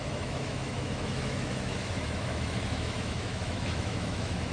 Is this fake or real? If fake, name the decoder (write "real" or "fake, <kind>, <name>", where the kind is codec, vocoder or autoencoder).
fake, autoencoder, DAC-VAE